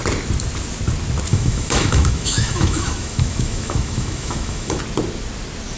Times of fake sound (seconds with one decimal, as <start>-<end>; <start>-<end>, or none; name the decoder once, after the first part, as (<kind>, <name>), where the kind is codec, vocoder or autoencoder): 1.3-4.8 (autoencoder, DAC-VAE)